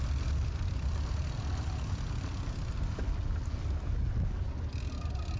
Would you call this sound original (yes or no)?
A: yes